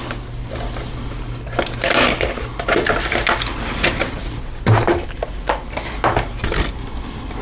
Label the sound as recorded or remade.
recorded